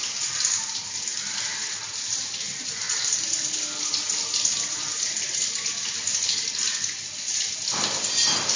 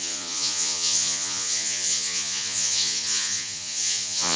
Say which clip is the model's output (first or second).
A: second